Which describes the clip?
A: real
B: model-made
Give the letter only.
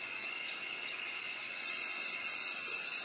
B